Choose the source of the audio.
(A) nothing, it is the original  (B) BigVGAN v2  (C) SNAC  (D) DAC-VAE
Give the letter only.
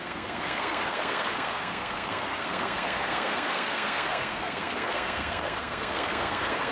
C